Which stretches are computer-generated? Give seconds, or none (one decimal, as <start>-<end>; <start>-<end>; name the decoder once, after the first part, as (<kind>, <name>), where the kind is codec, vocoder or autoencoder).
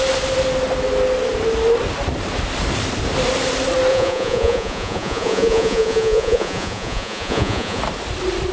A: 3.9-7.8 (vocoder, Vocos)